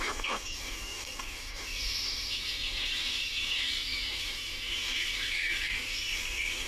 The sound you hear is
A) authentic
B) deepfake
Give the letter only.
B